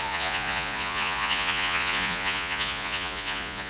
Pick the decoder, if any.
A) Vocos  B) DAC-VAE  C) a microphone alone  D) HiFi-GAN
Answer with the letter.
A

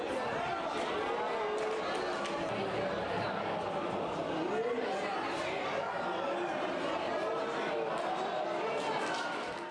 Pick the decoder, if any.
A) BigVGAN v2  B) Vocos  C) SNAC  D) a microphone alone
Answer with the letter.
D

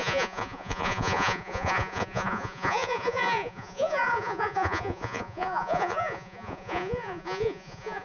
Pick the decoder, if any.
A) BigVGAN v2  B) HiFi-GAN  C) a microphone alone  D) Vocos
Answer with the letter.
D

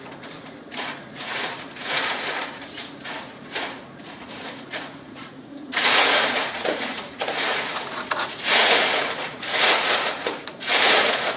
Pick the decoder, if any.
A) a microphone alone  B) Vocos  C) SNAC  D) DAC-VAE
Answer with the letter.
B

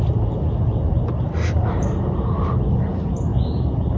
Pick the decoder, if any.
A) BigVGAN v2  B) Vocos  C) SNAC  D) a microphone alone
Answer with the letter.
D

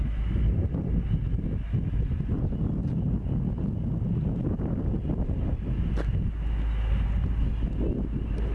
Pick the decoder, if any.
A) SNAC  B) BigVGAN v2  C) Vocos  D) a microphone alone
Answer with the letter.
D